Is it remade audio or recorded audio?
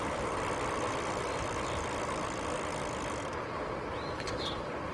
recorded